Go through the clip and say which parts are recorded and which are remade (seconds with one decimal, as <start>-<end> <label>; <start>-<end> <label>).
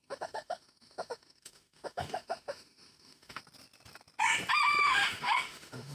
0.0-3.4 remade; 3.4-4.8 recorded; 4.8-5.9 remade